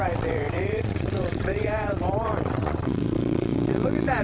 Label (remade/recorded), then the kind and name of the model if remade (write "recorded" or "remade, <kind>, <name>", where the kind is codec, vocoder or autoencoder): remade, vocoder, WaveNeXt